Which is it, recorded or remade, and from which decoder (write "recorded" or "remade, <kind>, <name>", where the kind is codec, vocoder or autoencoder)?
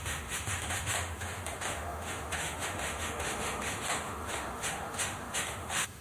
remade, autoencoder, DAC-VAE